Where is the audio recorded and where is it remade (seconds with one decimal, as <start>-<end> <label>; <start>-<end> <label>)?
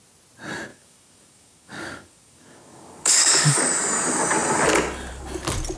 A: 0.0-0.7 recorded; 0.7-3.6 remade; 3.6-5.8 recorded